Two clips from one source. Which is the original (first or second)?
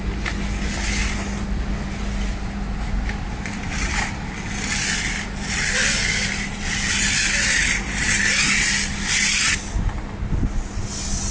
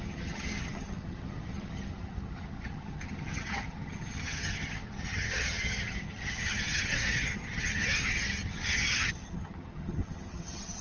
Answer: first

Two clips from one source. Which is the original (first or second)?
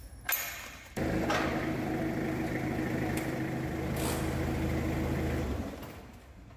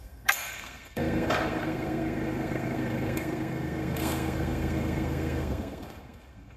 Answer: first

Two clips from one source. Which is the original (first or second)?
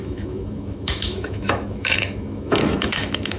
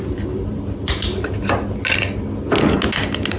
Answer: second